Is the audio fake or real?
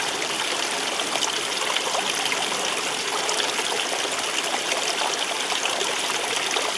real